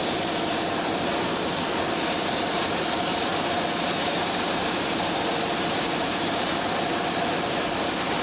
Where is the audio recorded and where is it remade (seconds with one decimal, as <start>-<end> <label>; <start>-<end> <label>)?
0.0-1.8 recorded; 1.8-3.3 remade; 3.3-4.6 recorded; 4.6-8.2 remade